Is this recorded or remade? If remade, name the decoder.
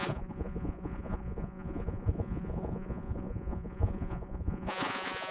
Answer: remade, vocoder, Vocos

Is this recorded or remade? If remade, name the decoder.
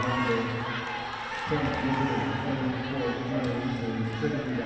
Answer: recorded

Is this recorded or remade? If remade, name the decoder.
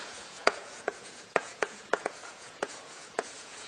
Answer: remade, vocoder, Vocos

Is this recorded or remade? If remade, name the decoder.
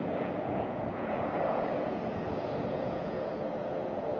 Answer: remade, vocoder, Vocos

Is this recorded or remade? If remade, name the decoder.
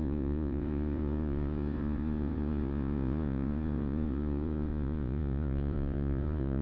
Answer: remade, vocoder, Vocos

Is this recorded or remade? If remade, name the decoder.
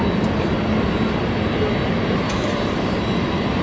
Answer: recorded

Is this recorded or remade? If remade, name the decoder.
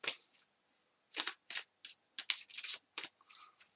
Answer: recorded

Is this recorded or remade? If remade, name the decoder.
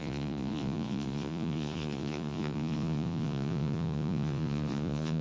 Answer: remade, vocoder, Vocos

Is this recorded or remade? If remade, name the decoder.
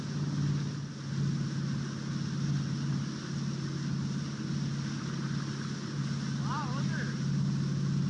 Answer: recorded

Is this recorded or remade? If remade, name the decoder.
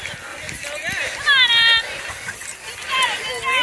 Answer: recorded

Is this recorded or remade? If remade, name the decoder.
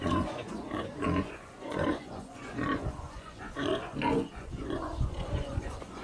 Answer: remade, vocoder, Vocos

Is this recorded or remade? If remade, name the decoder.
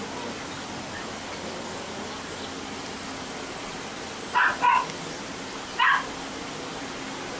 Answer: recorded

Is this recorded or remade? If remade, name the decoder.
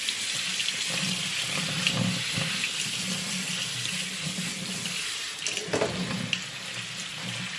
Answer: recorded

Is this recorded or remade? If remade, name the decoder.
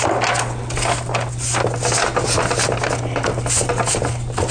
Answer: recorded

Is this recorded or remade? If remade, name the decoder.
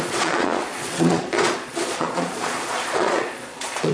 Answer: remade, vocoder, Vocos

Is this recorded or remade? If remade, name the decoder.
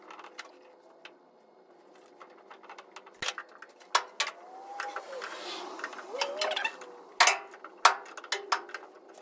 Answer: recorded